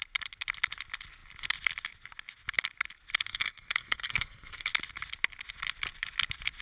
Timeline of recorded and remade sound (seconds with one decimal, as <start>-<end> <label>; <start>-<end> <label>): 0.0-3.3 recorded; 3.3-4.7 remade; 4.7-6.6 recorded

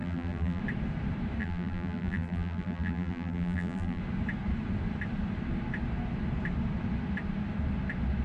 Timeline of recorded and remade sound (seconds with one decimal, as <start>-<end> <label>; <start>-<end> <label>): 0.0-0.6 remade; 0.6-1.4 recorded; 1.4-4.0 remade; 4.0-8.2 recorded

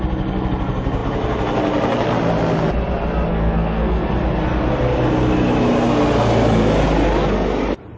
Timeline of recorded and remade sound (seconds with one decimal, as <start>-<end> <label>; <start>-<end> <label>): 0.0-3.3 recorded; 3.3-4.1 remade; 4.1-8.0 recorded

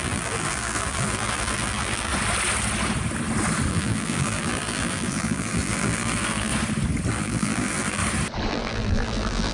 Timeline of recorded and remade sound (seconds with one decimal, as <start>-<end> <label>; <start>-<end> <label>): 0.0-2.1 remade; 2.1-3.7 recorded; 3.7-6.5 remade; 6.5-7.1 recorded; 7.1-8.0 remade; 8.0-8.5 recorded; 8.5-9.5 remade

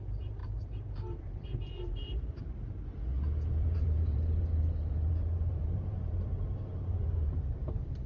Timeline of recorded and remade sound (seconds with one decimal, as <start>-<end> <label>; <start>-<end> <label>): 0.0-2.9 remade; 2.9-3.5 recorded; 3.5-8.1 remade

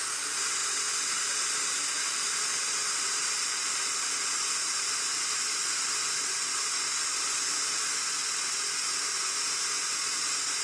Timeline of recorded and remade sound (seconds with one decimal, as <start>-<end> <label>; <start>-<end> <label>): 0.0-3.7 recorded; 3.7-9.0 remade; 9.0-10.6 recorded

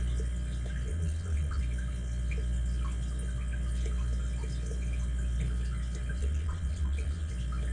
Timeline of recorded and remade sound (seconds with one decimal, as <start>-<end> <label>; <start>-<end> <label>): 0.0-0.9 recorded; 0.9-1.6 remade; 1.6-6.2 recorded; 6.2-7.3 remade; 7.3-7.7 recorded